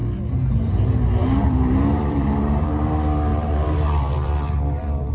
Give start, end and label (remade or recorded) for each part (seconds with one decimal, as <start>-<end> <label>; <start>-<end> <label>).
0.0-1.2 recorded; 1.2-2.8 remade; 2.8-3.3 recorded; 3.3-5.1 remade